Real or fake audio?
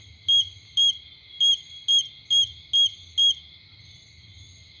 real